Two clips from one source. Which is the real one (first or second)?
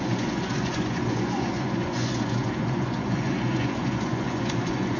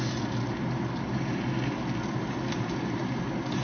second